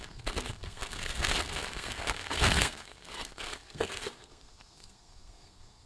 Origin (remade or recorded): remade